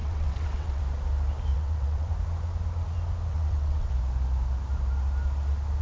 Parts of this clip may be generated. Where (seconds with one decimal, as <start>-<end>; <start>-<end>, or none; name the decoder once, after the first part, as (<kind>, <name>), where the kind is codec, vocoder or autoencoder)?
0.0-0.8 (vocoder, WaveNeXt); 1.5-2.1; 3.3-3.9